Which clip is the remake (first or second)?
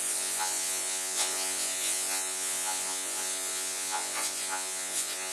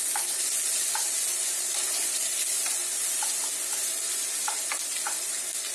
first